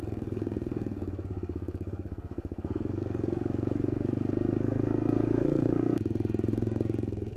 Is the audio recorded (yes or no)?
no